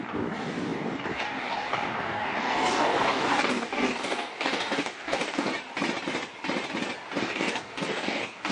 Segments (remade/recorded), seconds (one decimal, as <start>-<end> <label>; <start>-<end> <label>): 0.0-5.5 remade; 5.5-7.2 recorded; 7.2-8.5 remade